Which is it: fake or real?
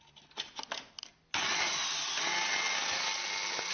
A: real